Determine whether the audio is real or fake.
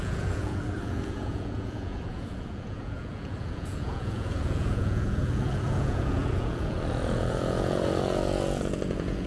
fake